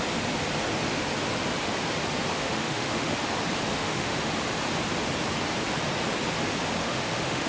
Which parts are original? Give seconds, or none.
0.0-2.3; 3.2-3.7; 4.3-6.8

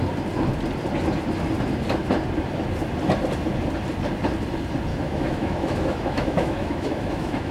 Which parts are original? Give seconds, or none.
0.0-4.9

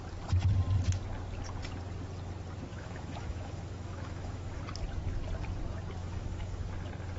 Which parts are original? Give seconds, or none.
0.0-2.7; 4.6-6.0; 6.7-7.2